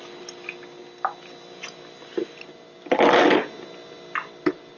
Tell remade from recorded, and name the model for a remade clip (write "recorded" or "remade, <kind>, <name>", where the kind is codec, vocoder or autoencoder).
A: recorded